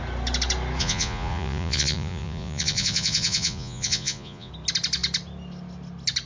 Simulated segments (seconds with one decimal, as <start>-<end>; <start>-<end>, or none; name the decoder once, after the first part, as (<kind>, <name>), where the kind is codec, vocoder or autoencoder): 0.8-4.5 (vocoder, Vocos)

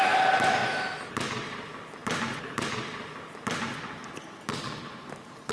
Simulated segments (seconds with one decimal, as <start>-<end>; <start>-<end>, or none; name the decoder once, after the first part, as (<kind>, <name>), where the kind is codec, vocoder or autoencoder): none

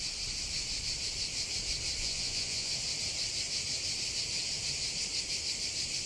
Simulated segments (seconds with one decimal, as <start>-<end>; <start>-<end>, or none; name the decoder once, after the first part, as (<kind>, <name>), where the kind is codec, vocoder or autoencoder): 2.0-2.7 (vocoder, Vocos)

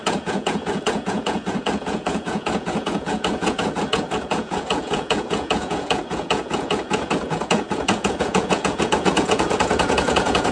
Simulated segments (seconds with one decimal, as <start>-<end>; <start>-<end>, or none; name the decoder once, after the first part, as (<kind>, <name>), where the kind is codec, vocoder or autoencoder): 0.0-10.5 (vocoder, Vocos)